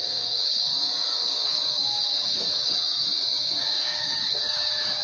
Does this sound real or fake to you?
fake